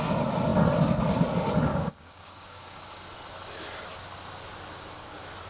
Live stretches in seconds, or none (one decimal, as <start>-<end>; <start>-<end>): 0.0-1.7; 2.9-5.5